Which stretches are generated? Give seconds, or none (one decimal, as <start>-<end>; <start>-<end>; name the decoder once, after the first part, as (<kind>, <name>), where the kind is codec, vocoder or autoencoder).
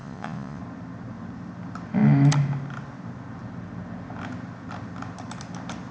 0.0-0.6 (vocoder, Vocos)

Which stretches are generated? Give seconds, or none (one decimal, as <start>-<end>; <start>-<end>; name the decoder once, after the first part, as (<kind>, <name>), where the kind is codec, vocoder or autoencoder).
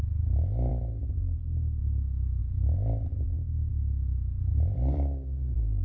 4.5-5.8 (vocoder, BigVGAN v2)